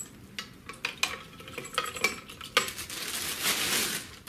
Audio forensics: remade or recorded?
recorded